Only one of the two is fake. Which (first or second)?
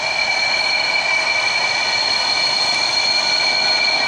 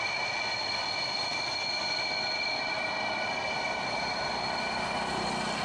first